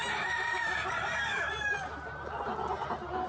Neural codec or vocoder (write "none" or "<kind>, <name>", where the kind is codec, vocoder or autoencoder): none